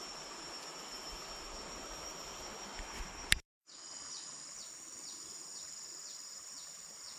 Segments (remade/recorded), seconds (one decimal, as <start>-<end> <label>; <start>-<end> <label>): 0.0-3.6 remade; 3.6-5.9 recorded; 5.9-7.2 remade